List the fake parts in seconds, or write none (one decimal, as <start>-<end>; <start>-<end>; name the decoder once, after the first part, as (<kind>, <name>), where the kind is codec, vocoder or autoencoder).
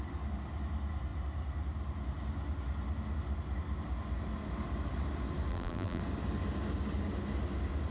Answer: 5.5-6.0 (vocoder, BigVGAN v2)